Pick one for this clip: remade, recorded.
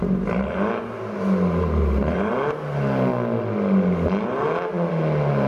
recorded